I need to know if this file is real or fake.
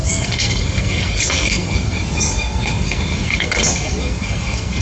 fake